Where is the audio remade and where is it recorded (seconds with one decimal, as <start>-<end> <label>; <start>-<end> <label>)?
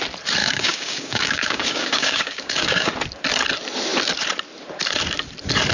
0.0-0.4 recorded; 0.4-2.9 remade; 2.9-5.7 recorded